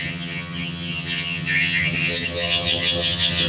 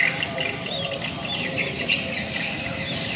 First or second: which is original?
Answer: second